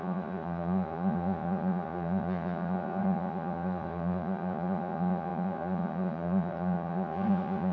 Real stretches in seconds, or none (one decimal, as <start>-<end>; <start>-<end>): none